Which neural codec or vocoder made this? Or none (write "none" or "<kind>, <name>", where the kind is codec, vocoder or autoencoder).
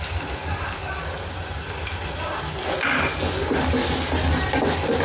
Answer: none